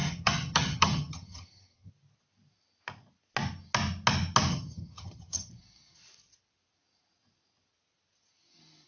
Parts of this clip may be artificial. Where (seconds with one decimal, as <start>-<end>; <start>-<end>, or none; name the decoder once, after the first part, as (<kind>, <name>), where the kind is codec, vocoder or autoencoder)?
0.0-1.9 (vocoder, HiFi-GAN); 4.5-5.5